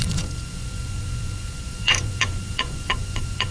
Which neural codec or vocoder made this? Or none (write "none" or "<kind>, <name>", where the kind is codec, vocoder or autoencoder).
vocoder, Vocos